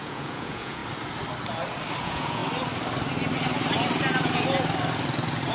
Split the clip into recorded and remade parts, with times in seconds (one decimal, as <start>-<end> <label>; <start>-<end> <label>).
0.0-0.8 remade; 0.8-2.0 recorded; 2.0-2.4 remade; 2.4-5.5 recorded